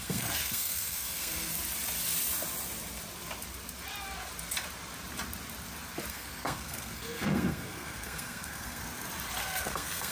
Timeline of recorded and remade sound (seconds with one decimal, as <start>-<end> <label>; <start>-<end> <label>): 0.0-1.5 remade; 1.5-6.1 recorded; 6.1-8.8 remade; 8.8-9.4 recorded; 9.4-10.1 remade